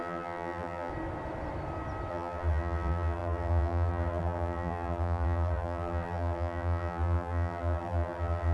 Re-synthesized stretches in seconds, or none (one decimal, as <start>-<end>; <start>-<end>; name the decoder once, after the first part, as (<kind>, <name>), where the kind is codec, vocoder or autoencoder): 0.0-0.9 (vocoder, BigVGAN v2); 2.1-8.5

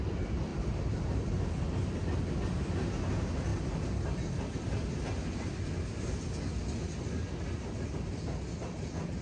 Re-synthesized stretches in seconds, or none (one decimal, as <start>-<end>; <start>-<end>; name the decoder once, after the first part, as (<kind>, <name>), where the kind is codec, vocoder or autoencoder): none

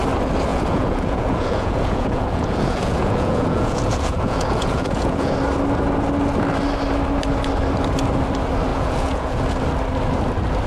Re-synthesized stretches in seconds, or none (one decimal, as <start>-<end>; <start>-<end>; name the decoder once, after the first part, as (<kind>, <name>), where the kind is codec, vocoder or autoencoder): 0.5-5.3 (vocoder, Vocos); 8.7-9.4

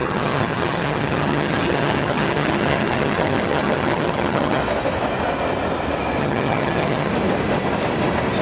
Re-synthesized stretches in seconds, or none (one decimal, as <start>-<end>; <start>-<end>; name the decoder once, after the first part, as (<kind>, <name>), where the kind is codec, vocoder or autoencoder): 0.0-4.6 (vocoder, HiFi-GAN); 6.2-7.1

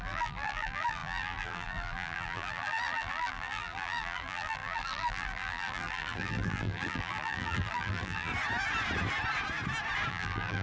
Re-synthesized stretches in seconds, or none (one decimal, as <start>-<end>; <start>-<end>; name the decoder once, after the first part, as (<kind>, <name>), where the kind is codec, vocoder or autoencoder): 0.0-8.3 (vocoder, BigVGAN v2); 10.1-10.6